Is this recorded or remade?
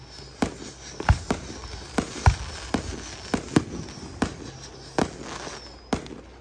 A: recorded